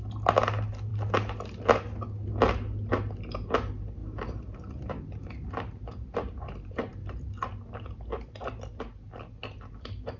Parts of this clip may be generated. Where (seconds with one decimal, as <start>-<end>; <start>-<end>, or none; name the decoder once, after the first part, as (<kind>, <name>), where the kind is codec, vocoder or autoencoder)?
none